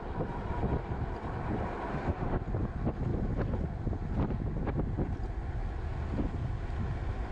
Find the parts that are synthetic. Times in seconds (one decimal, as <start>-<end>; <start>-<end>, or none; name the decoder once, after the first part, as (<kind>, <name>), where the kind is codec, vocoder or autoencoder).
1.9-2.4 (autoencoder, DAC-VAE)